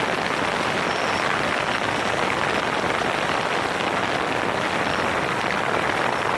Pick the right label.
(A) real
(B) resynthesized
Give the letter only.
A